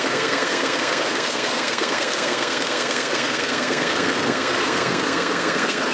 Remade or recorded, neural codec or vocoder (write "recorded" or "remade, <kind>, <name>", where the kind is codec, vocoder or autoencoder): remade, codec, SNAC